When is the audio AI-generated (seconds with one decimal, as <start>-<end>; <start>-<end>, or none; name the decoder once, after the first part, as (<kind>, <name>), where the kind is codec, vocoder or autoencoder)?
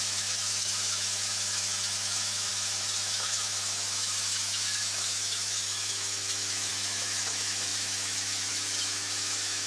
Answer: 0.0-9.7 (autoencoder, DAC-VAE)